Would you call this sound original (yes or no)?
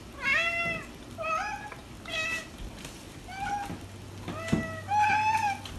yes